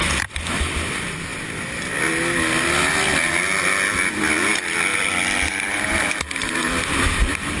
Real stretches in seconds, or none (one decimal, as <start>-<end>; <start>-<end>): 0.9-1.3; 1.8-4.9